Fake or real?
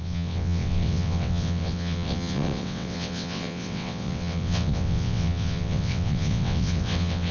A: fake